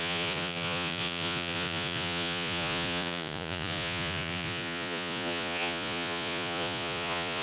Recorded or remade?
remade